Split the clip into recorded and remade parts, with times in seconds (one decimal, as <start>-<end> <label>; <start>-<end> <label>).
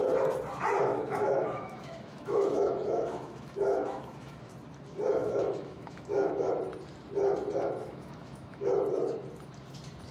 0.0-0.9 recorded; 0.9-4.4 remade; 4.4-5.2 recorded; 5.2-6.5 remade; 6.5-7.8 recorded; 7.8-8.7 remade; 8.7-10.1 recorded